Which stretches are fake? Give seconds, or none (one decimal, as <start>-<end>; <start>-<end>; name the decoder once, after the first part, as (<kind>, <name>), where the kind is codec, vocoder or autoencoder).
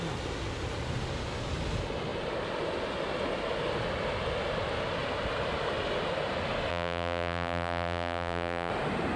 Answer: 6.7-8.7 (vocoder, BigVGAN v2)